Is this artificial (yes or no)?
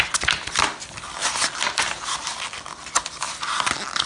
no